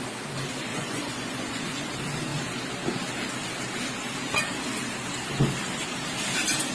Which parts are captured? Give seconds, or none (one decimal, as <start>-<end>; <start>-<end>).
0.0-0.7; 1.9-6.7